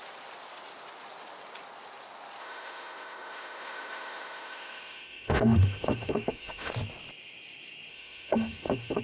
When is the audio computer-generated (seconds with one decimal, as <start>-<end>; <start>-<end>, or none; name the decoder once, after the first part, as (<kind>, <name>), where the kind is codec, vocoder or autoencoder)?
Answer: 2.4-6.7 (autoencoder, DAC-VAE); 7.9-9.0